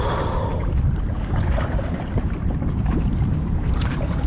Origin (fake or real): fake